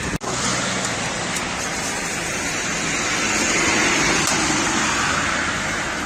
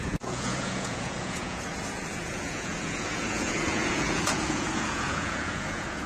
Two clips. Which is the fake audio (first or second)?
second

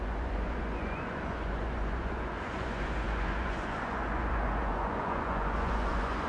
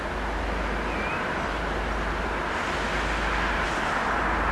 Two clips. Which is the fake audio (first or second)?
first